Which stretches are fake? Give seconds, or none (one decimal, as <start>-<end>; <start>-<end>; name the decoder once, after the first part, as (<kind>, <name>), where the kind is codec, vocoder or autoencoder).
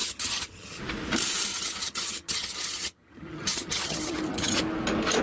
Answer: 0.0-0.8 (vocoder, HiFi-GAN); 1.5-4.6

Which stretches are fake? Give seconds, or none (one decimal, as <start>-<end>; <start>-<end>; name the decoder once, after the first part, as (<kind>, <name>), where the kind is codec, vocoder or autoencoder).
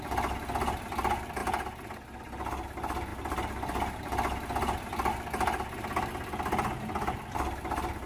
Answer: none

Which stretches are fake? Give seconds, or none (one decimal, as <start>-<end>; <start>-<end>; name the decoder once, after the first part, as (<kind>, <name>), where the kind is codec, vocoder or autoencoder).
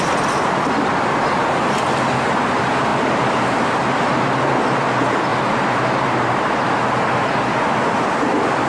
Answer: none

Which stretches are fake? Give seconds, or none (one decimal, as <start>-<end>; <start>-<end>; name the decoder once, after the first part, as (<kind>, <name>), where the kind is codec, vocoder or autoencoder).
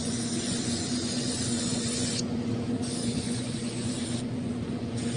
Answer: 0.0-5.2 (vocoder, Vocos)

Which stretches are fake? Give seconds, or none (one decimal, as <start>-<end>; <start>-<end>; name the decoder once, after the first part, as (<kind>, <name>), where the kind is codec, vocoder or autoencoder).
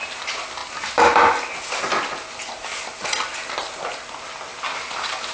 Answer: none